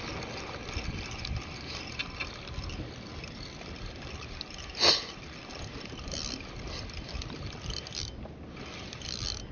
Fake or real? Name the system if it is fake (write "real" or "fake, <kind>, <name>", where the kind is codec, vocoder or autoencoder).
real